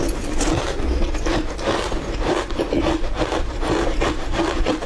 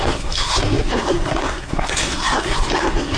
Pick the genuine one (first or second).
first